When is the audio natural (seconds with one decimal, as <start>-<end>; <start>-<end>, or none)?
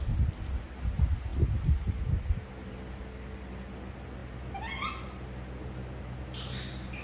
0.0-7.0